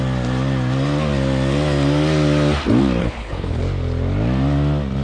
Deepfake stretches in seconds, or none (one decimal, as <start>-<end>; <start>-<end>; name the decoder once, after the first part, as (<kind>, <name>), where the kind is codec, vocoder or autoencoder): 3.0-3.6 (codec, HILCodec)